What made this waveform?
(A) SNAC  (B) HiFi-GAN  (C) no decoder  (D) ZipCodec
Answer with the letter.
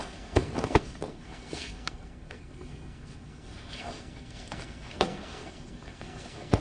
A